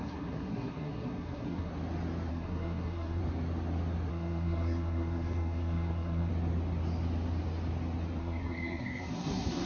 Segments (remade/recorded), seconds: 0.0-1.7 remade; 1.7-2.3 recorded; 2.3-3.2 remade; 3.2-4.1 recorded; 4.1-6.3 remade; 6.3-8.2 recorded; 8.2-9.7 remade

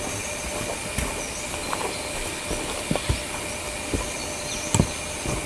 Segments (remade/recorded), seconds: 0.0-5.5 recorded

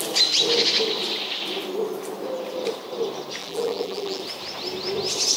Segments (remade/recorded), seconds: 0.0-3.4 recorded; 3.4-4.2 remade; 4.2-5.4 recorded